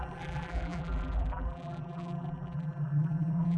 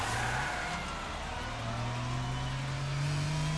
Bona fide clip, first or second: second